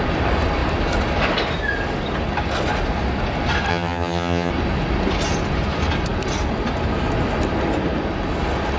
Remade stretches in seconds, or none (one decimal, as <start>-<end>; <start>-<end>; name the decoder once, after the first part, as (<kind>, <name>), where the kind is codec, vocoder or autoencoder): 3.7-4.5 (vocoder, HiFi-GAN)